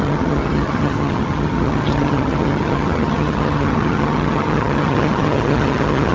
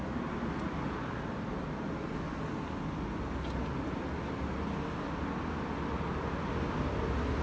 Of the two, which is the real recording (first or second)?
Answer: second